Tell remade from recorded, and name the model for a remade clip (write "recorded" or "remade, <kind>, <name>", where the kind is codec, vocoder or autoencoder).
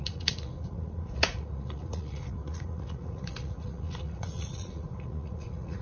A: remade, vocoder, Vocos